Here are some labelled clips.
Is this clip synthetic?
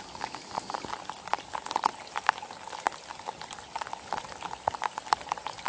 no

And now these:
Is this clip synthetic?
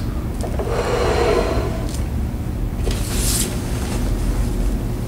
no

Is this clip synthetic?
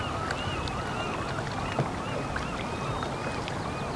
no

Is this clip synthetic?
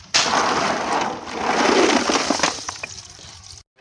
no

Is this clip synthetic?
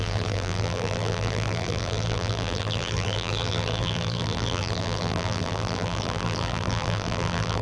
yes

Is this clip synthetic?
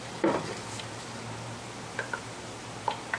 no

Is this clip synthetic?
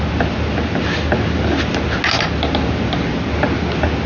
no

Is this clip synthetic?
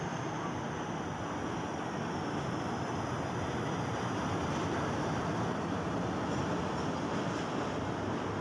no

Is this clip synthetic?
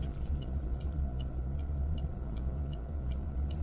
yes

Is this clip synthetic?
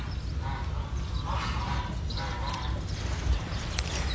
no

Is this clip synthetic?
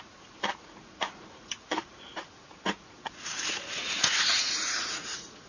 yes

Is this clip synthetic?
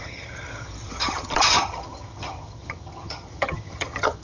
yes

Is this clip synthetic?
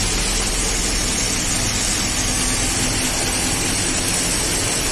no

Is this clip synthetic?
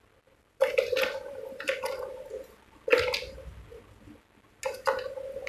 no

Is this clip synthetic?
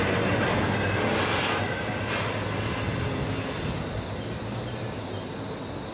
no